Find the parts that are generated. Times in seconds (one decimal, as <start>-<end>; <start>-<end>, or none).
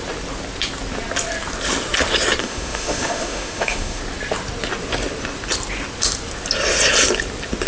2.4-4.0